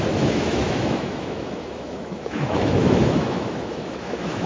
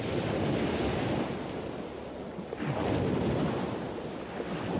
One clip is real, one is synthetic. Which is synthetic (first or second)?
first